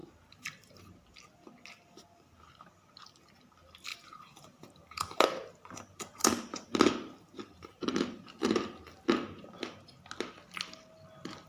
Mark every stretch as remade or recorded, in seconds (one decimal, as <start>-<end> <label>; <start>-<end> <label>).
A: 0.0-0.8 remade; 0.8-3.9 recorded; 3.9-9.1 remade; 9.1-11.5 recorded